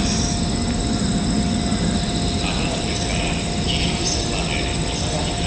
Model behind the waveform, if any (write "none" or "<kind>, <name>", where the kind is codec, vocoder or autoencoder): none